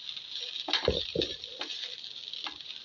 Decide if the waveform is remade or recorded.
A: recorded